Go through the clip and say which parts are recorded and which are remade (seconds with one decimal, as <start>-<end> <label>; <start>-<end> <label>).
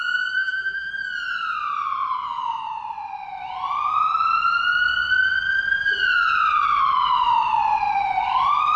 0.0-0.4 recorded; 0.4-0.9 remade; 0.9-8.8 recorded